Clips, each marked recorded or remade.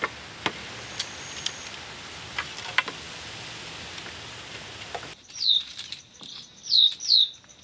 recorded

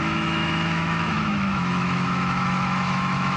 remade